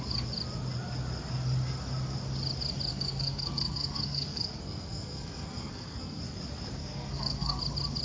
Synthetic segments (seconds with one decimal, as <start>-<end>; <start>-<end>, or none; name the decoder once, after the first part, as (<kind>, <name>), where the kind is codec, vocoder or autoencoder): 2.9-6.2 (codec, SNAC); 6.8-7.6

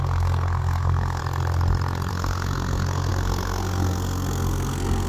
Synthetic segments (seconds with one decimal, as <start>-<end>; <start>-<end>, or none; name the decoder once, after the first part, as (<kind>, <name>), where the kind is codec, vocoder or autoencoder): 0.0-1.2 (codec, SNAC); 2.1-5.1

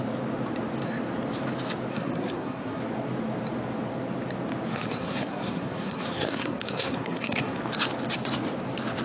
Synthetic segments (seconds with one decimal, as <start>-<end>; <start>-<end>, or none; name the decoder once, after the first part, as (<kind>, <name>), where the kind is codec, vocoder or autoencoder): 1.9-2.8 (codec, SNAC); 4.7-7.6

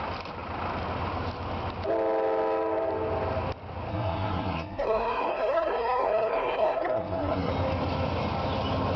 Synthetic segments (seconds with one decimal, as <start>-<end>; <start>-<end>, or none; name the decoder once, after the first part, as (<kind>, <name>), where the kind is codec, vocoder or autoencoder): 3.9-7.5 (codec, SNAC)

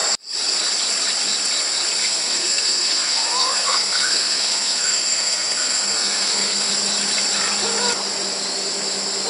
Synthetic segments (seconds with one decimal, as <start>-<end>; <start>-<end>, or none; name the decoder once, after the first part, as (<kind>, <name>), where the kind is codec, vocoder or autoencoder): 2.0-6.7 (codec, SNAC)